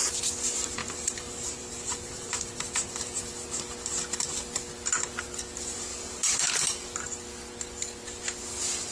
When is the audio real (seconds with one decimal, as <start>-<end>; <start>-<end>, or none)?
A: 0.0-0.8; 3.2-5.9; 6.5-8.9